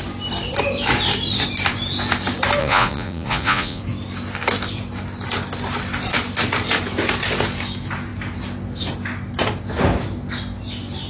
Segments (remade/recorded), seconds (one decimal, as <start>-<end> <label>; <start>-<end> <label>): 0.0-2.6 recorded; 2.6-3.8 remade; 3.8-11.1 recorded